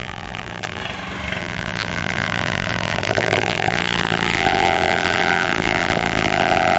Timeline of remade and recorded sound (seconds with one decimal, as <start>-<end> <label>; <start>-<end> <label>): 0.0-0.8 remade; 0.8-1.4 recorded; 1.4-6.8 remade